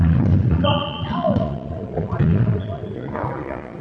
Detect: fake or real fake